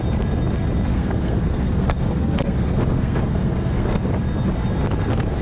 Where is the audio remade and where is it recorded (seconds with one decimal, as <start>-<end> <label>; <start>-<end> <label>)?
0.0-0.9 recorded; 0.9-4.1 remade; 4.1-5.4 recorded